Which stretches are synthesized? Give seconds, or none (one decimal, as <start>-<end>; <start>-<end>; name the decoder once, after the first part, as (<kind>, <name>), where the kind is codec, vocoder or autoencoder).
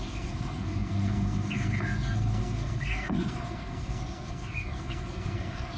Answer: 0.0-5.8 (codec, SNAC)